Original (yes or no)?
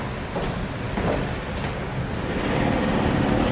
yes